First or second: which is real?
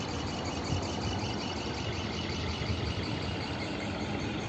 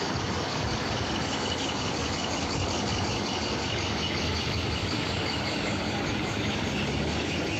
first